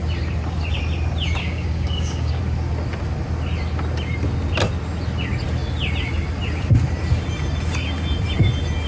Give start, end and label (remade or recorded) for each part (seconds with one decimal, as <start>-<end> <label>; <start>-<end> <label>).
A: 0.0-1.4 recorded; 1.4-2.4 remade; 2.4-8.9 recorded